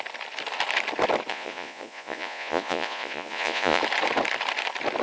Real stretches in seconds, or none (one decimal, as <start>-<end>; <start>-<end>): 0.0-1.3; 3.8-5.0